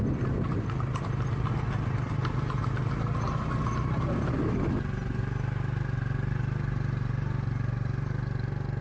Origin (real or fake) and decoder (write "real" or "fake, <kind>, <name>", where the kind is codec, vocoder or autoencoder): real